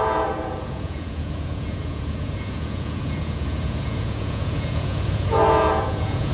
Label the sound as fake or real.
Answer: fake